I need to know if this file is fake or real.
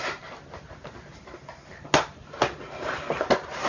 real